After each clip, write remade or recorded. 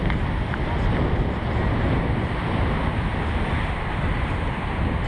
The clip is recorded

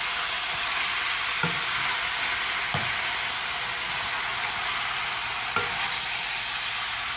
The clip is recorded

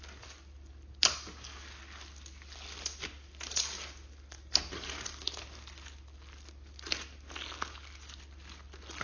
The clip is recorded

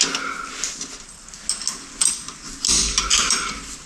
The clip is recorded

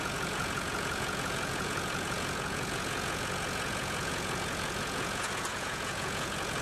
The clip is remade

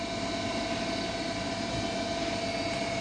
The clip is recorded